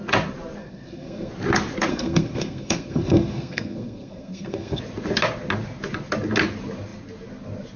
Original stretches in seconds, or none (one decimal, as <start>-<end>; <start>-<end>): 0.0-0.6; 1.3-1.9; 4.8-7.8